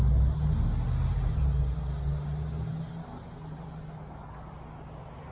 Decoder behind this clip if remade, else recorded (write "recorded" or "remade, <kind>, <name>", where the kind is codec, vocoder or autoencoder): recorded